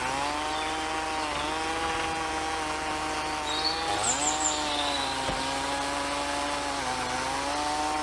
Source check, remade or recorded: recorded